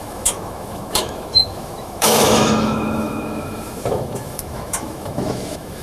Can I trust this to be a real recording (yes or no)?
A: no